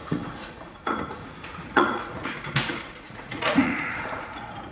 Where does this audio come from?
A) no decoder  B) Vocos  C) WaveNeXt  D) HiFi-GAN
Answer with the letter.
B